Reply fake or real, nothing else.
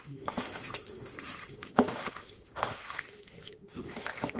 fake